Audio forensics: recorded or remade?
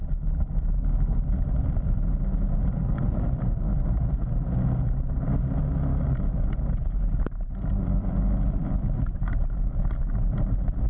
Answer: recorded